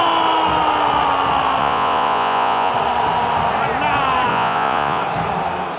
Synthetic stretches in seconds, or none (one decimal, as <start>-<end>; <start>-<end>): 1.6-2.7; 4.3-5.0